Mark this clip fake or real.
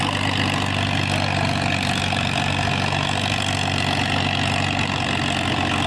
real